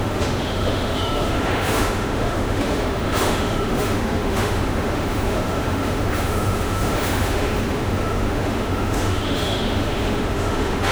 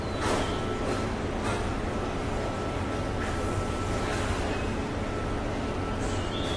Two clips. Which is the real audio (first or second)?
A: second